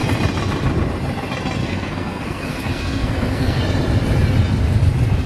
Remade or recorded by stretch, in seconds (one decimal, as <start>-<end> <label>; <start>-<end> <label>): 0.0-1.6 recorded; 1.6-3.6 remade; 3.6-5.3 recorded